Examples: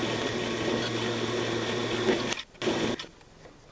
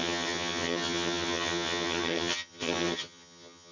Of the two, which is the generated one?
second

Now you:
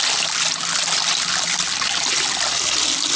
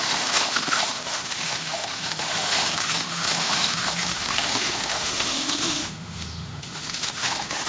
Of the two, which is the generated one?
second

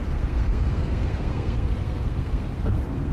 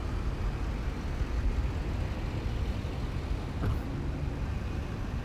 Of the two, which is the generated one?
first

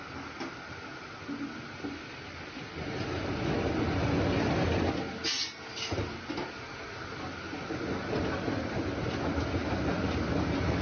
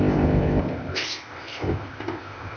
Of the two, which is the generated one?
second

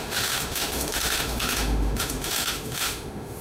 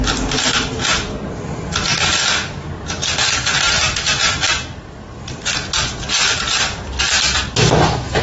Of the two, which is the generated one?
first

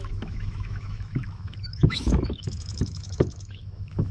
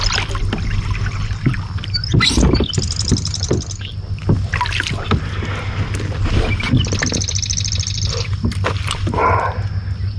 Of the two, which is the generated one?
first